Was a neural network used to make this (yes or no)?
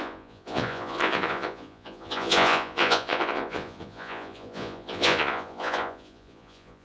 yes